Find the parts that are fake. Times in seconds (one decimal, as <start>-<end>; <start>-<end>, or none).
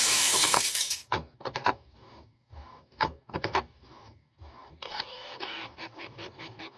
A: 0.0-6.8